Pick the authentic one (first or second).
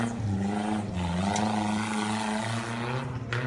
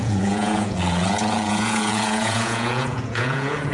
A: first